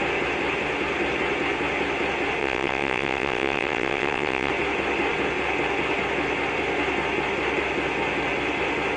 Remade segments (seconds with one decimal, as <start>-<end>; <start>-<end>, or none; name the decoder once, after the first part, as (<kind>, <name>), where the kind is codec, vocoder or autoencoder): 2.4-4.5 (vocoder, WaveNeXt)